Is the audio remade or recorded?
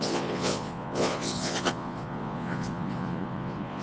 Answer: remade